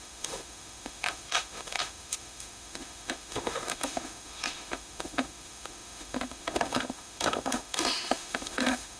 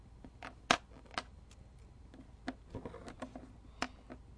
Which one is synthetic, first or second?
first